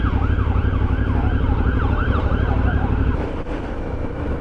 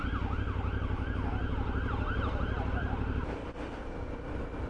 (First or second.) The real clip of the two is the second